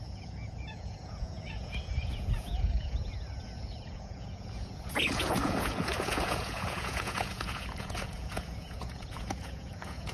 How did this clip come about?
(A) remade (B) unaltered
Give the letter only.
A